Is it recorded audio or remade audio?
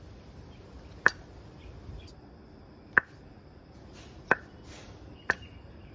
remade